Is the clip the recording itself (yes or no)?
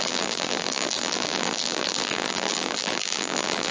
no